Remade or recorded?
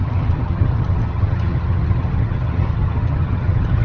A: remade